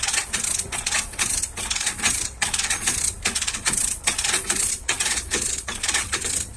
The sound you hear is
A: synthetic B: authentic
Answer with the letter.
A